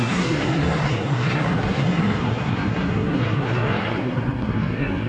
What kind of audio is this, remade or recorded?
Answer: remade